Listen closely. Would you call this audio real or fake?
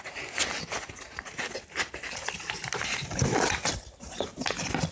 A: real